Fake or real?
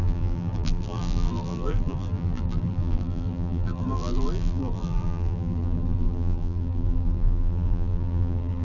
fake